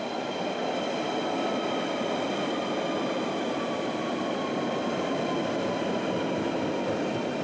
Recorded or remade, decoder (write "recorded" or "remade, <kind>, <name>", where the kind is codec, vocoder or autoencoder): recorded